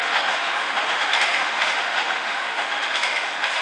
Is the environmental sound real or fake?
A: fake